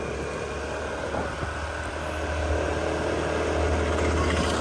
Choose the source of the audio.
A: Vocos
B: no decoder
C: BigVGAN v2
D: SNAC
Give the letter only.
B